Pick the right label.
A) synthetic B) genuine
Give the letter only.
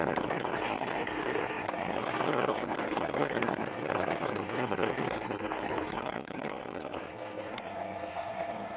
A